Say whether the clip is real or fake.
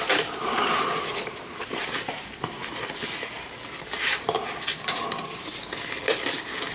real